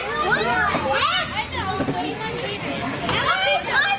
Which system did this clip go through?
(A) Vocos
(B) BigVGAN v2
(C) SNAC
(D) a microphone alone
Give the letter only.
D